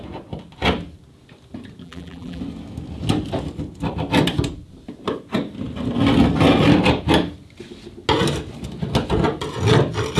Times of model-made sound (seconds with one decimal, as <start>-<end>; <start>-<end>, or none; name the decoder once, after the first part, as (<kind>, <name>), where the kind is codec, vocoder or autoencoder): 1.8-2.4 (vocoder, BigVGAN v2)